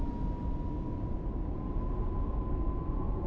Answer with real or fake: real